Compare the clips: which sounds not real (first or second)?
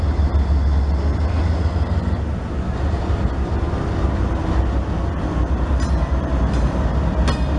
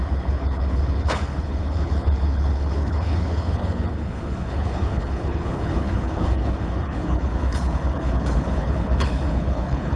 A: second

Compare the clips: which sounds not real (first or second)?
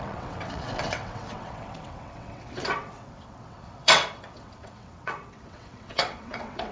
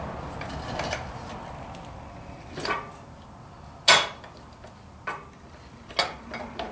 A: first